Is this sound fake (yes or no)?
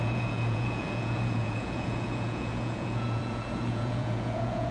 yes